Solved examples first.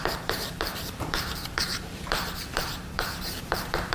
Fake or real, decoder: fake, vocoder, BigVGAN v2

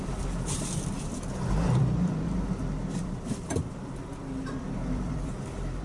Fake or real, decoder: fake, vocoder, BigVGAN v2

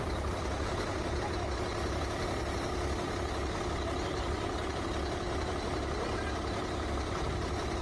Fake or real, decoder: fake, vocoder, BigVGAN v2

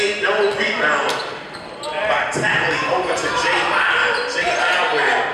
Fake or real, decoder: fake, vocoder, BigVGAN v2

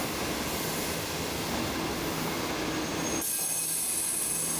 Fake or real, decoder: real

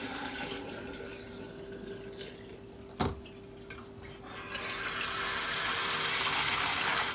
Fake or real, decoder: real